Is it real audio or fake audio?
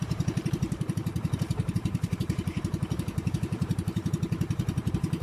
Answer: fake